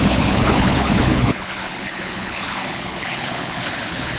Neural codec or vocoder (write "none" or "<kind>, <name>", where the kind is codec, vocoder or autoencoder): codec, HILCodec